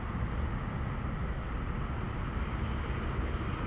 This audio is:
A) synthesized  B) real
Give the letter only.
B